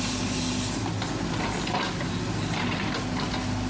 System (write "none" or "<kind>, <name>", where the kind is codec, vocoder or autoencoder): none